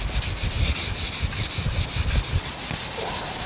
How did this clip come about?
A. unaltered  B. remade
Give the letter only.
A